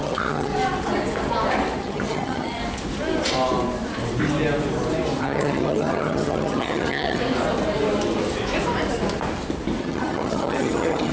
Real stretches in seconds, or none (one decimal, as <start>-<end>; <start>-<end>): 0.5-1.8; 2.6-5.2; 7.2-9.8